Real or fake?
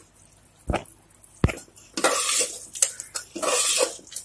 real